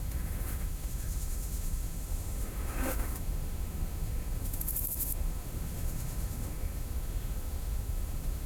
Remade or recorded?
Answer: remade